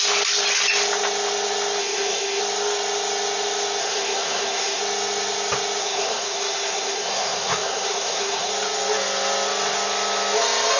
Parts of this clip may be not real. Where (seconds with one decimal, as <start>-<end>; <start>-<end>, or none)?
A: 1.8-2.4; 3.8-4.8; 5.8-8.5